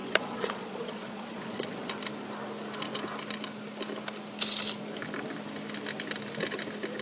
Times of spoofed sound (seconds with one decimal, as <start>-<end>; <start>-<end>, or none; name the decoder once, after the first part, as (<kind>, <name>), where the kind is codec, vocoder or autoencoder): 0.0-1.9 (vocoder, Vocos)

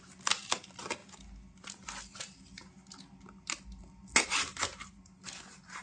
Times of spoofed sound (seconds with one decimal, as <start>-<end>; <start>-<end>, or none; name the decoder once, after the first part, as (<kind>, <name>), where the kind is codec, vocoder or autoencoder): none

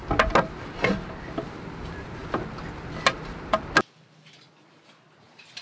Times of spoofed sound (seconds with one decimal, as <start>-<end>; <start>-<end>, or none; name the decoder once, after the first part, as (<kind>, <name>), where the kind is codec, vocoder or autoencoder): none

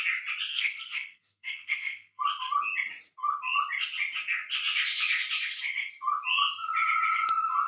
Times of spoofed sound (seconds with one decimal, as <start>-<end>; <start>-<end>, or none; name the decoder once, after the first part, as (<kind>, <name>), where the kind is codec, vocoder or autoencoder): 0.5-2.2 (codec, SNAC)

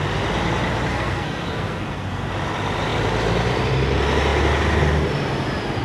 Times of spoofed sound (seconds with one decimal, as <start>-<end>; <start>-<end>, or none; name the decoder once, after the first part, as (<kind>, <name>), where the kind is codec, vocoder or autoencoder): 0.9-2.3 (codec, SNAC)

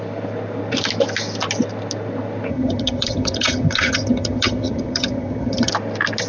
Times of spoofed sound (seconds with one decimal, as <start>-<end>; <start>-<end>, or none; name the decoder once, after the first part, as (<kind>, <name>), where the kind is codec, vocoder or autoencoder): 2.5-5.7 (vocoder, HiFi-GAN)